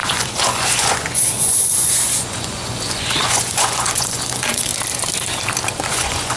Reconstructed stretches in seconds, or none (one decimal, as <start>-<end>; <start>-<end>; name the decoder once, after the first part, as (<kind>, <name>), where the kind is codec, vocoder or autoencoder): 0.0-4.7 (vocoder, Vocos); 5.9-6.4